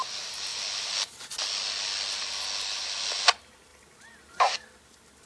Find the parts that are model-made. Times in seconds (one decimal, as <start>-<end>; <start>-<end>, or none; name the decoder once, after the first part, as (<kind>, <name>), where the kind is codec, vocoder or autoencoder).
none